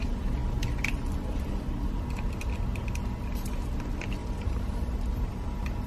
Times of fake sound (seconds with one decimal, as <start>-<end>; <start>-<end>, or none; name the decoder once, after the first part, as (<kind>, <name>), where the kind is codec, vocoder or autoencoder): 4.2-5.9 (vocoder, BigVGAN v2)